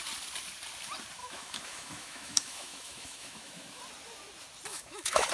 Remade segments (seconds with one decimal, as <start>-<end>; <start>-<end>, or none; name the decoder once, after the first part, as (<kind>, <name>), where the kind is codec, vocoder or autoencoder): 1.2-3.8 (autoencoder, DAC-VAE); 4.7-5.3